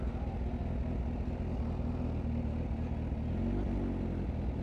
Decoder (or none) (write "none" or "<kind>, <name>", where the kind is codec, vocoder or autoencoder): none